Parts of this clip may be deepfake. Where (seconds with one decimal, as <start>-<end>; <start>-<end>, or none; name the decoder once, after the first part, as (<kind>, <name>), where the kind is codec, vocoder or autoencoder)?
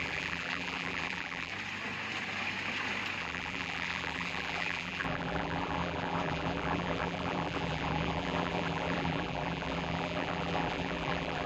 0.0-1.5 (vocoder, BigVGAN v2); 3.2-11.5